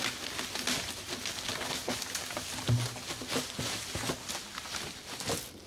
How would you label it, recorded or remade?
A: recorded